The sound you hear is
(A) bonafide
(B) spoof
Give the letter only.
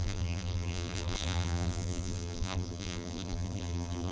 B